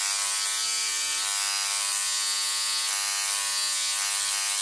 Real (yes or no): yes